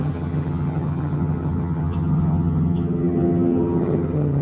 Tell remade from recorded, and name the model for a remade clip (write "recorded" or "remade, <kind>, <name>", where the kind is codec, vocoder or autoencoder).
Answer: remade, vocoder, HiFi-GAN